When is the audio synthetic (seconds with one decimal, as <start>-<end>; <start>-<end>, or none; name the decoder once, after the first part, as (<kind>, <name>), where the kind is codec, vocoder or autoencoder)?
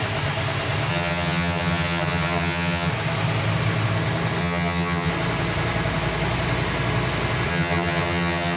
0.9-2.9 (vocoder, HiFi-GAN); 4.4-5.1; 7.5-8.6